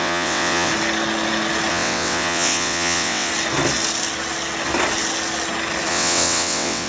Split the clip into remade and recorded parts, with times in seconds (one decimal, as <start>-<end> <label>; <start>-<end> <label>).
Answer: 0.0-0.7 remade; 0.7-1.7 recorded; 1.7-3.3 remade; 3.3-5.9 recorded; 5.9-6.9 remade